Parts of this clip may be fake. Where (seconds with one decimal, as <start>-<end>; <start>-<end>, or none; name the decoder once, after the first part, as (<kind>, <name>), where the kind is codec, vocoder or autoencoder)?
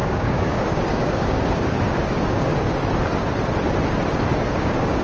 0.0-2.5 (codec, DAC); 4.5-5.0